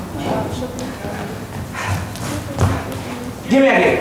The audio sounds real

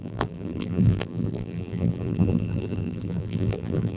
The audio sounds fake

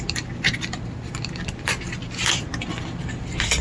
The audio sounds fake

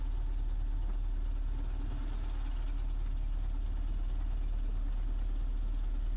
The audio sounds real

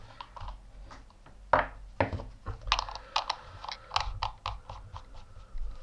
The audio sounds real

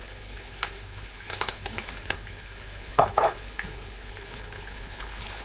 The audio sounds fake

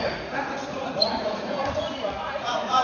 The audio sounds fake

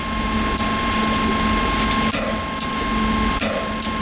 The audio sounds real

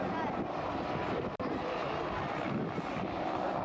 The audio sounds real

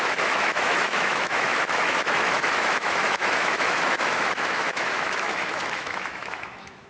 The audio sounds fake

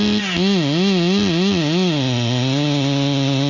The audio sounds real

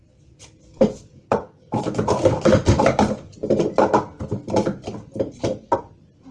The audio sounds real